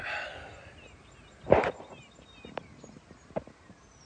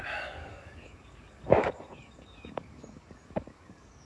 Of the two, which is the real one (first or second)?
first